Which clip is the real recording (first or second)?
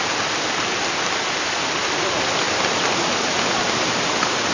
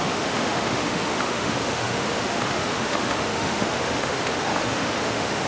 first